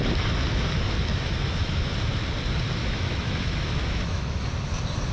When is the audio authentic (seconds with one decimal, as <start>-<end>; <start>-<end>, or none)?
0.0-1.1; 1.9-2.8; 4.4-5.1